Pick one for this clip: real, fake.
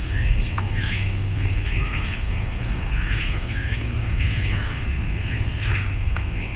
fake